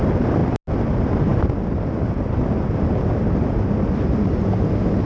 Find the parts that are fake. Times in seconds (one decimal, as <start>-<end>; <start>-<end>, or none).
none